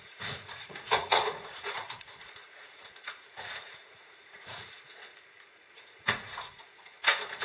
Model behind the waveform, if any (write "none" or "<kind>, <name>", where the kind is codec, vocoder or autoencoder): vocoder, Vocos